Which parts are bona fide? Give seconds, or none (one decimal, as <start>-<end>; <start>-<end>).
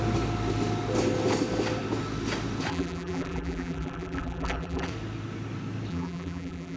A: 0.0-2.7; 4.9-5.9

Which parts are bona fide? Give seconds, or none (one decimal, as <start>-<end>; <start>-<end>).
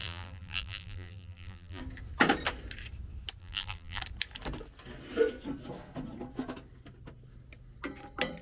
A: 1.8-3.4; 4.0-8.4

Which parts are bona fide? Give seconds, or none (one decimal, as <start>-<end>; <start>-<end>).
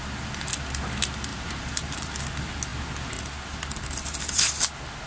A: 0.0-1.3; 2.1-5.1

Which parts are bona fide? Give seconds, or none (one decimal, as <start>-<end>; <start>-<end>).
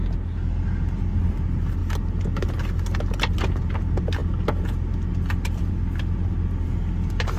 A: 0.0-7.4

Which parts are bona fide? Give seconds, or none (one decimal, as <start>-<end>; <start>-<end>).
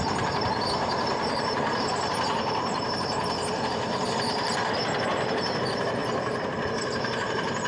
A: 6.0-6.7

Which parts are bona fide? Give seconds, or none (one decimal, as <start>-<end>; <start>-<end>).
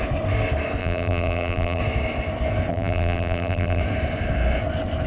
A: 0.0-0.8; 1.8-2.7; 3.8-5.1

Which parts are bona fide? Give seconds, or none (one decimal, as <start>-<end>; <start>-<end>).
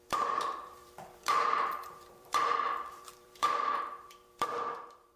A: none